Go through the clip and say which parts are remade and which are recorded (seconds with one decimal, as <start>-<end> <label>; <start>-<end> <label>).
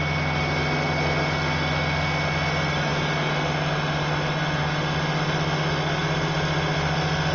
0.0-7.3 recorded